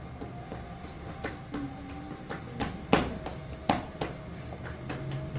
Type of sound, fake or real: real